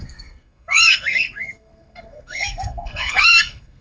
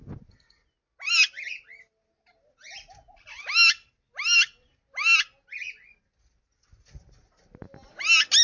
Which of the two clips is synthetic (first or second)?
first